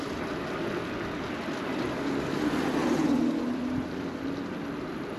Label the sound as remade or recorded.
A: recorded